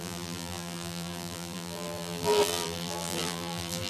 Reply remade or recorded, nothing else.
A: remade